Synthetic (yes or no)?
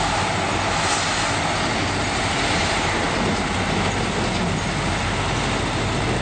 no